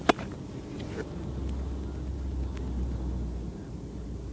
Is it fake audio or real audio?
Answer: real